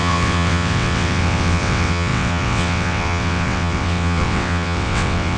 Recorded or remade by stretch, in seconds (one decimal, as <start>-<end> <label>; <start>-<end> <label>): 0.0-5.4 remade